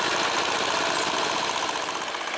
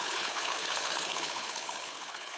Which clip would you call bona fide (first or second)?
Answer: first